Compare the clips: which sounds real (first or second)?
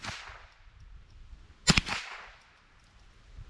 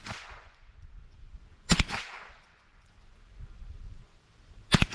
first